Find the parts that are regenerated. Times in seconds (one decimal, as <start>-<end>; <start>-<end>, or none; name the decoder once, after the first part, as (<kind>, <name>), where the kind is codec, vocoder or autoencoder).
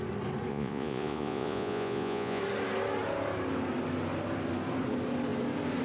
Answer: 0.5-2.4 (vocoder, Vocos)